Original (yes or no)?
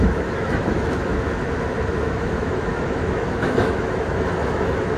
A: no